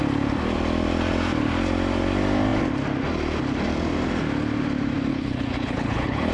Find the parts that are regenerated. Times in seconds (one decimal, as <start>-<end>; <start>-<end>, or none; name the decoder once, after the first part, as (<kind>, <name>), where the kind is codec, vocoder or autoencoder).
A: 5.1-6.3 (codec, HILCodec)